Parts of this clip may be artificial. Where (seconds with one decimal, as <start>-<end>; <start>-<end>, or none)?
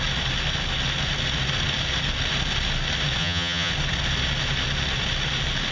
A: 3.2-3.7